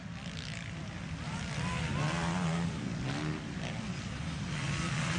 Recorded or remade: recorded